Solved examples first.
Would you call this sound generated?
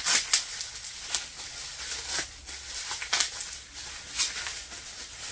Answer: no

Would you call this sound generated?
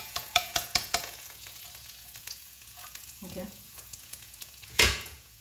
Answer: yes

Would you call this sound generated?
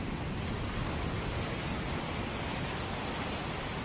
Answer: no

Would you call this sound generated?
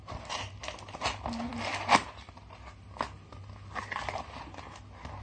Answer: no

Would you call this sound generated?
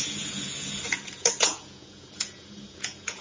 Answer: yes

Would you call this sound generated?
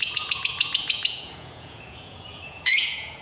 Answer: yes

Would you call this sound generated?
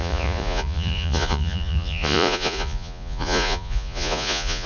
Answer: yes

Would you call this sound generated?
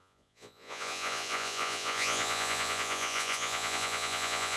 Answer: yes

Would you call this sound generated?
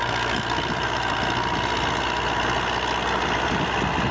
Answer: no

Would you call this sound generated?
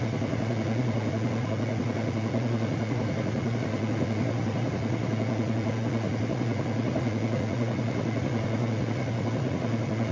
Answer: yes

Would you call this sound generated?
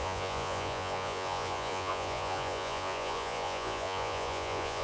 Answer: yes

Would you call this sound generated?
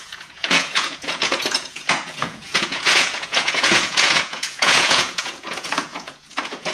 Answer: yes